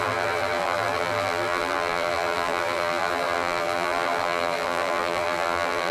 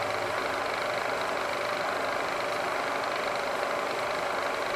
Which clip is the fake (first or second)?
first